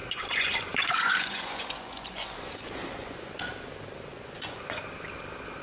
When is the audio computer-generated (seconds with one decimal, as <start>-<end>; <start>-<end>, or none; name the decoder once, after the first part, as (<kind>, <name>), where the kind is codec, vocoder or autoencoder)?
0.0-3.4 (vocoder, Vocos); 4.1-4.8